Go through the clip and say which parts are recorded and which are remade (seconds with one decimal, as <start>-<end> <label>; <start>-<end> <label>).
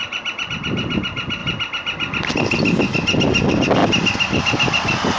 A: 0.0-0.5 remade; 0.5-1.4 recorded; 1.4-2.3 remade; 2.3-5.2 recorded